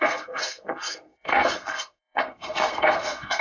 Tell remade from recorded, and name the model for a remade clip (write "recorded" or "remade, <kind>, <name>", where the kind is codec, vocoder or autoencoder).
remade, codec, SNAC